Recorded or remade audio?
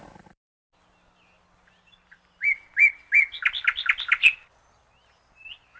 recorded